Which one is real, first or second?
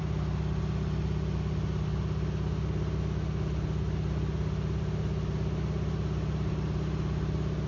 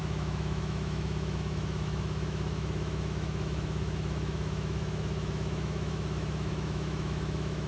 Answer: first